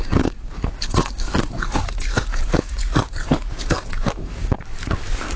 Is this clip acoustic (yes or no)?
no